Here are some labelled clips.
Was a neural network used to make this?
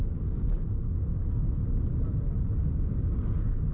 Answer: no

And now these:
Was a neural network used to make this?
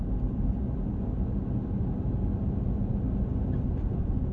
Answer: no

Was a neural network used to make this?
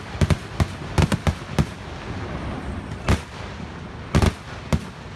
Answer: no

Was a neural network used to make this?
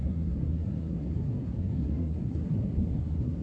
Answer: yes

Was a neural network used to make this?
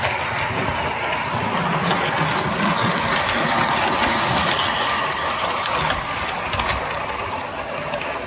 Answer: no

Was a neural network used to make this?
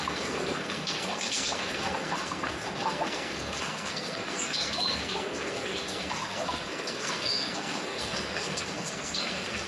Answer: yes